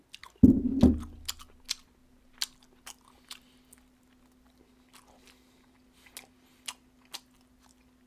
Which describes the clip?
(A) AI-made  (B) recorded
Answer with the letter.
B